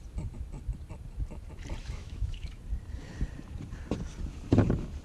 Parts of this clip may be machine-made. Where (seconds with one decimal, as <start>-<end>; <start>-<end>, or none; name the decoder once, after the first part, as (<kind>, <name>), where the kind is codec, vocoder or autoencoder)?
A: 1.8-2.6 (autoencoder, DAC-VAE)